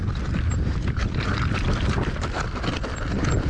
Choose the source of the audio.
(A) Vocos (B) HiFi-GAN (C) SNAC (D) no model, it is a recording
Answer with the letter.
D